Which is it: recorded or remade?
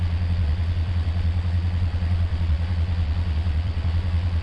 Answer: remade